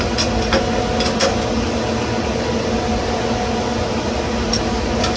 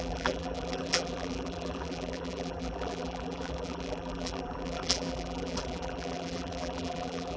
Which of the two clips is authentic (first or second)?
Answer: first